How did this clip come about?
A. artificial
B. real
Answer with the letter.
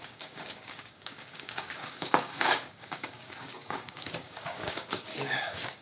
A